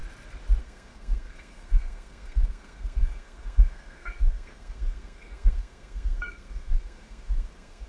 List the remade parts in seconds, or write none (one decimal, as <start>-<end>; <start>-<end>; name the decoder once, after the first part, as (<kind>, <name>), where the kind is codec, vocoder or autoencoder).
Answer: 0.6-7.9 (codec, SNAC)